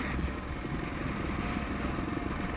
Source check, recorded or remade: recorded